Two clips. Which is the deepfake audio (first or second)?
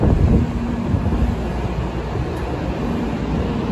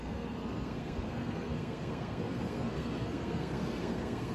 second